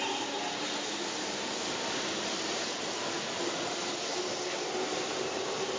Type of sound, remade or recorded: recorded